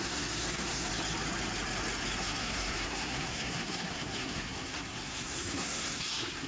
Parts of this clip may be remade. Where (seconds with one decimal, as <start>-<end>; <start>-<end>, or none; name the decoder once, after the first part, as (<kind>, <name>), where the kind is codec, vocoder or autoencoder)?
0.0-0.9 (codec, SNAC); 2.2-6.5